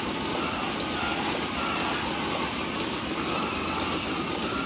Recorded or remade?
recorded